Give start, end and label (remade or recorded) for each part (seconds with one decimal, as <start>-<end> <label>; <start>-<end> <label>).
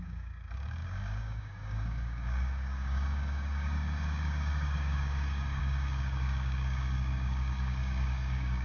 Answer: 0.0-8.6 remade